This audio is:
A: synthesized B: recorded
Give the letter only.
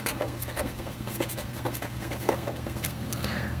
A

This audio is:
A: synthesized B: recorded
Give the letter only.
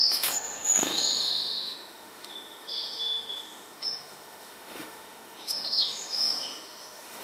A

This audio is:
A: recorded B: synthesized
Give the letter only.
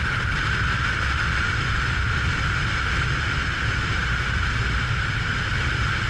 A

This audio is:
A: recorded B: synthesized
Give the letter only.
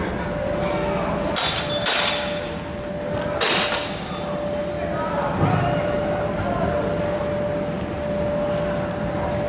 A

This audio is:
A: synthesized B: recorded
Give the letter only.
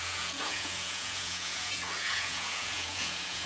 A